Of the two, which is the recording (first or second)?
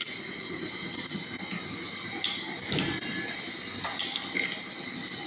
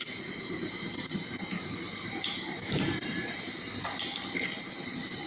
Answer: first